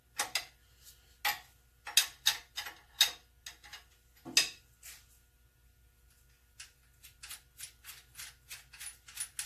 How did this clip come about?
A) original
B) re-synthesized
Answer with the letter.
A